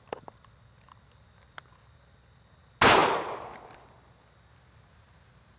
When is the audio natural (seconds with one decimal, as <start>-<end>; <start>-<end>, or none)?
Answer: 0.0-5.6